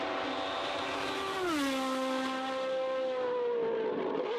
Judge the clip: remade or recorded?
recorded